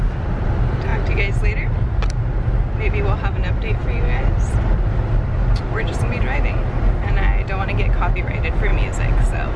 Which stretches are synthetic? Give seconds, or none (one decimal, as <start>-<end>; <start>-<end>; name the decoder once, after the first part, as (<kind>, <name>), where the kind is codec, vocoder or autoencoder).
none